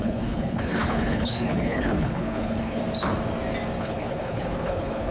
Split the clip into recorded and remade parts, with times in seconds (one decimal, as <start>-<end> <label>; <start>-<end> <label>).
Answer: 0.0-2.8 remade; 2.8-3.8 recorded; 3.8-5.1 remade